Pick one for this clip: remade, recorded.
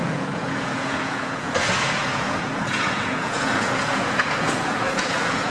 remade